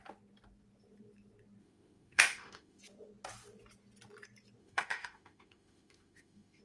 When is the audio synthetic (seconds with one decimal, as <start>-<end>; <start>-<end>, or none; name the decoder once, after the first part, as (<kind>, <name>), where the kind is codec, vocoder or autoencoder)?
1.6-2.8 (autoencoder, DAC-VAE); 4.6-6.6

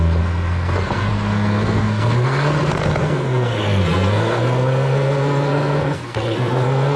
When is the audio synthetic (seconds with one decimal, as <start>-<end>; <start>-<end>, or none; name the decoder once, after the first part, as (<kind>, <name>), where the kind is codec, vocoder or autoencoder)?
0.0-7.0 (codec, SNAC)